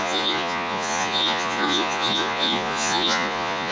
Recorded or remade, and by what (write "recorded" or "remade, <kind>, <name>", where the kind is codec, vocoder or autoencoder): remade, vocoder, Vocos